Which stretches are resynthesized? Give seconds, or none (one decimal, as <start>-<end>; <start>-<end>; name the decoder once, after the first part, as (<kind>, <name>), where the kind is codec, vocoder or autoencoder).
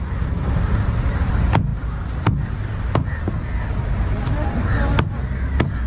none